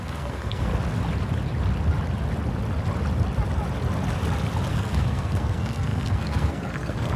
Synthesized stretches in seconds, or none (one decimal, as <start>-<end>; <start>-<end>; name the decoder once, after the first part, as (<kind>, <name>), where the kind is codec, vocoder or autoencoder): 0.0-0.7 (codec, SNAC); 4.7-7.2